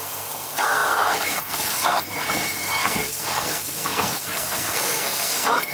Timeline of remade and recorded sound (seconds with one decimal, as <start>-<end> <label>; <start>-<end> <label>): 0.0-5.7 remade